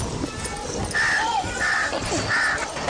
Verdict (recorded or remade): recorded